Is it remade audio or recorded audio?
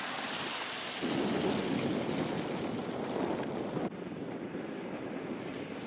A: recorded